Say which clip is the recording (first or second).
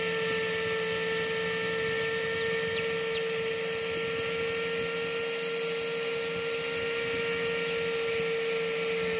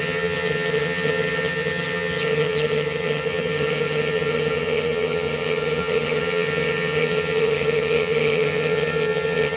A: first